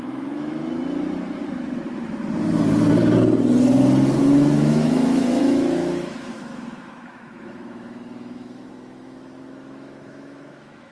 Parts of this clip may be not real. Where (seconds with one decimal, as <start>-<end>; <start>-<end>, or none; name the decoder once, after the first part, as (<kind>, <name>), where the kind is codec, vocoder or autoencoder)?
0.0-0.6 (autoencoder, DAC-VAE); 4.2-10.9